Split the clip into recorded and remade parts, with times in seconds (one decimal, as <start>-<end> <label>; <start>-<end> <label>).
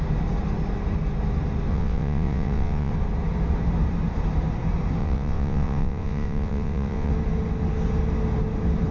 0.0-1.7 recorded; 1.7-2.9 remade; 2.9-5.0 recorded; 5.0-7.1 remade; 7.1-8.9 recorded